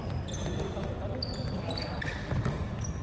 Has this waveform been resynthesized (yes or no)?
no